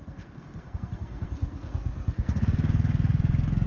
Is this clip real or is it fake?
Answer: fake